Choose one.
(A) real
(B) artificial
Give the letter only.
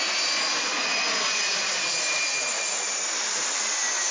A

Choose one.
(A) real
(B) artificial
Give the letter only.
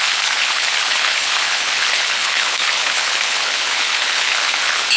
B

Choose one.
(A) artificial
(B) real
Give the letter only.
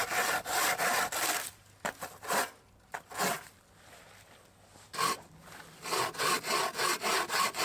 B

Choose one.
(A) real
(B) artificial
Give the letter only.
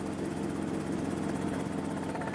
A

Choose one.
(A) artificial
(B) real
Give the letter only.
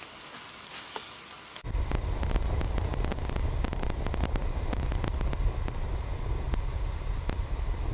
B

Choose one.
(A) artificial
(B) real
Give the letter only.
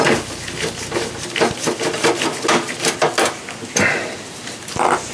B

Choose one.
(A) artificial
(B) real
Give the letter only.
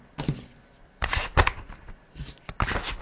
B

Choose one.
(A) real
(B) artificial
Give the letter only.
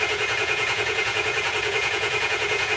B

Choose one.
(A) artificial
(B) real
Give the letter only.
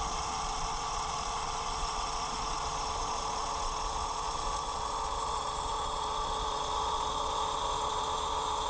A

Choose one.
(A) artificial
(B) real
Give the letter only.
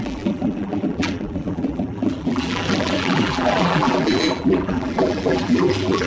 A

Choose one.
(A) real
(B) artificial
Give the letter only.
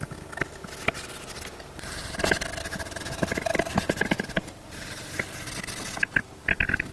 A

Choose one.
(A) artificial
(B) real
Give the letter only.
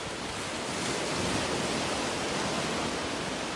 B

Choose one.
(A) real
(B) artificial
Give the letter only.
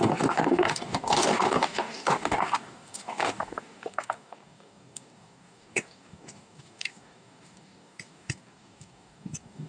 B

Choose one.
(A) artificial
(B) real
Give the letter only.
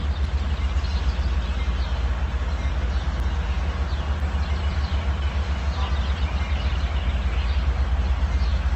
B